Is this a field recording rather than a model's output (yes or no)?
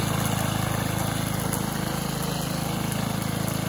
yes